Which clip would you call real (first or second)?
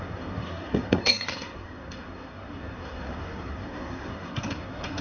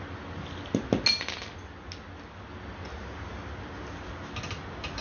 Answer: second